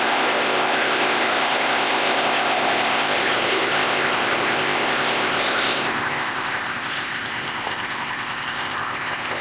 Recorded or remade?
remade